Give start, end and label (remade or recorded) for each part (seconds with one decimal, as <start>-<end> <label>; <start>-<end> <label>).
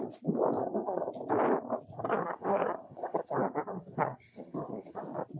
0.0-0.6 recorded; 0.6-1.1 remade; 1.1-1.9 recorded; 1.9-5.0 remade; 5.0-5.4 recorded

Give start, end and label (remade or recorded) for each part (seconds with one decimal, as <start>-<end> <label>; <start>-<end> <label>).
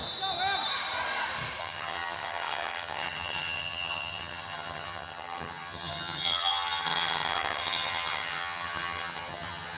0.0-1.6 recorded; 1.6-9.8 remade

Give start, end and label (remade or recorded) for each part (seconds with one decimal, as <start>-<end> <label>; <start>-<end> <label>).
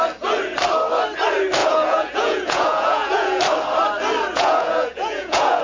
0.0-1.6 recorded; 1.6-3.4 remade; 3.4-4.3 recorded; 4.3-5.6 remade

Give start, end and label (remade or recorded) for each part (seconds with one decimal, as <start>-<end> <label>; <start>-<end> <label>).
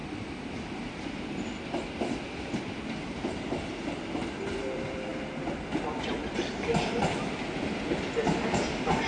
0.0-4.4 recorded; 4.4-5.1 remade; 5.1-8.5 recorded; 8.5-9.1 remade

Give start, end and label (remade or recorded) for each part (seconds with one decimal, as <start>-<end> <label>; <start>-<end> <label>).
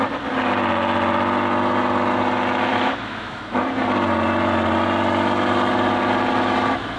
0.0-2.7 recorded; 2.7-3.6 remade; 3.6-7.0 recorded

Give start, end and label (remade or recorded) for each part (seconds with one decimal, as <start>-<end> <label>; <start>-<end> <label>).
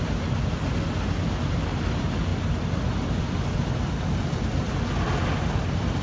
0.0-6.0 recorded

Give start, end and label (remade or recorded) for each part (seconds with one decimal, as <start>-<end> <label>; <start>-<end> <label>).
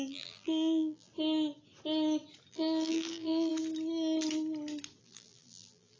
0.0-1.1 remade; 1.1-2.5 recorded; 2.5-3.5 remade; 3.5-5.0 recorded; 5.0-6.0 remade